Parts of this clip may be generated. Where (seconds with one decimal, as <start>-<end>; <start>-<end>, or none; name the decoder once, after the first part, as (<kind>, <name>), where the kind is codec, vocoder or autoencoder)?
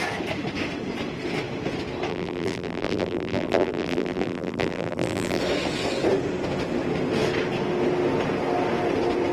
2.1-5.4 (vocoder, BigVGAN v2)